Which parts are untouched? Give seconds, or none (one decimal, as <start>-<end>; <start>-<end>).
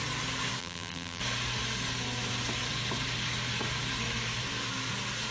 0.0-0.6; 1.2-5.3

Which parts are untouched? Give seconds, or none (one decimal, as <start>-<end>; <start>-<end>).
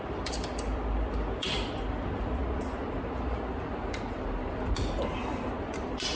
2.4-6.2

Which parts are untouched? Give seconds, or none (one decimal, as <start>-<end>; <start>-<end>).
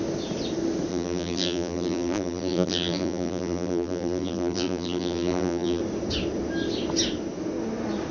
0.0-0.9; 5.8-8.1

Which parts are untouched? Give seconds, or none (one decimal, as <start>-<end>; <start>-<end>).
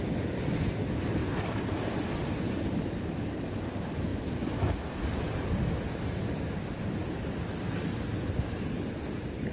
0.0-7.5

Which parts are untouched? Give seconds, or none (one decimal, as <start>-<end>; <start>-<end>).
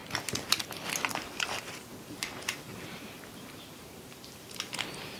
0.0-1.1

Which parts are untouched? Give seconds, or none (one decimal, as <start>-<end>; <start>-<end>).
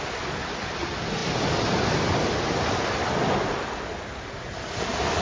0.0-5.2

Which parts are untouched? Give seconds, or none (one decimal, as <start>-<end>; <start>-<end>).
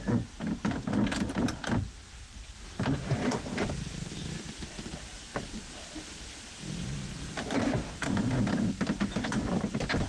none